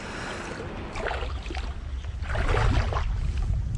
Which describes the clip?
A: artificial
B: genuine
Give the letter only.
B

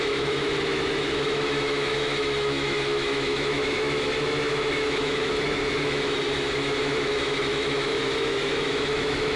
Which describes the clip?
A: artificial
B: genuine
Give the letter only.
A